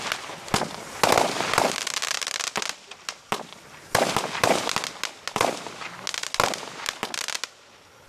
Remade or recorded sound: recorded